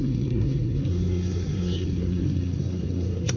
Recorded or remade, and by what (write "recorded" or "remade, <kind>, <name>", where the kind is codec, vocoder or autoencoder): remade, codec, SNAC